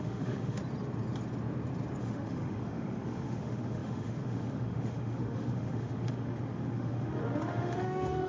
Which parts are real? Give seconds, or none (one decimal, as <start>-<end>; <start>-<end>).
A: 0.6-2.0